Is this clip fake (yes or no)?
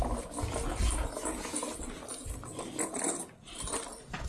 no